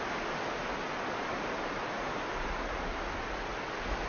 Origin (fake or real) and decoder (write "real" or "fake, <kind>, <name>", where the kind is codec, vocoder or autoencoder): real